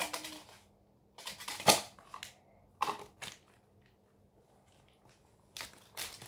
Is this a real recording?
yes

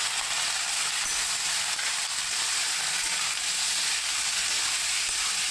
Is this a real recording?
yes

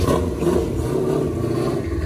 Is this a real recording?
yes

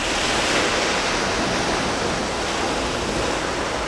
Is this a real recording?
yes